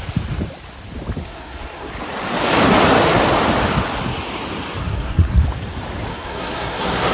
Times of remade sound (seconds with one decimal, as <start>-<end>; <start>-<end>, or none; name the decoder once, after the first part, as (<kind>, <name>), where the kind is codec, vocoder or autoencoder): 1.2-1.9 (codec, SNAC); 4.8-5.4; 6.1-7.1